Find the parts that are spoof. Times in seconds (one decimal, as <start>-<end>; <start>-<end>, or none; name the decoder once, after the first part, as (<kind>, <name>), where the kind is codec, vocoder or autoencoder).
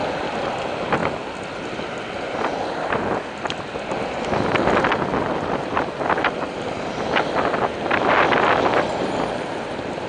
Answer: none